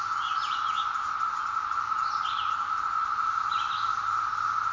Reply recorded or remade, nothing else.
recorded